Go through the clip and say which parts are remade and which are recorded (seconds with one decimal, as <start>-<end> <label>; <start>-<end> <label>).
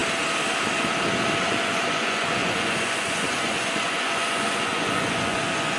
0.0-1.6 recorded; 1.6-5.8 remade